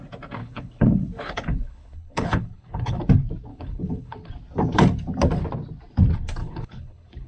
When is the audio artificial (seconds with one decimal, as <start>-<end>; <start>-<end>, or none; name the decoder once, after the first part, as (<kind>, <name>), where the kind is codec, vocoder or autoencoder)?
0.4-3.0 (codec, HILCodec); 3.5-4.3; 6.4-7.3